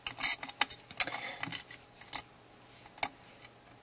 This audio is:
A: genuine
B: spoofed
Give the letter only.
A